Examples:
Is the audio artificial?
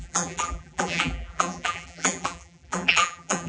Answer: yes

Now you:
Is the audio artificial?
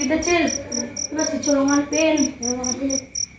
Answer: no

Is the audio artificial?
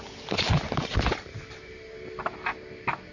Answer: no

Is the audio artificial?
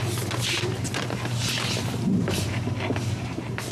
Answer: no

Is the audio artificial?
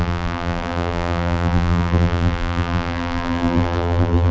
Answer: yes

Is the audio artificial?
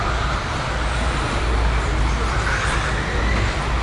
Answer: no